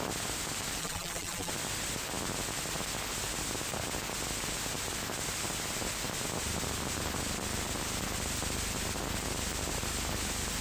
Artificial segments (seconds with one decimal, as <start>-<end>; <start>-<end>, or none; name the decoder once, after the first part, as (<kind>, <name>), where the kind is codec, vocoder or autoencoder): 0.8-1.5 (vocoder, BigVGAN v2)